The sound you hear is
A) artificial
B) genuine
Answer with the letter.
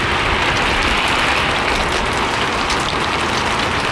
B